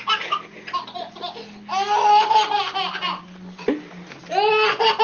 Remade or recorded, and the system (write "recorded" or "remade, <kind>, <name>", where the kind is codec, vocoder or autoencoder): recorded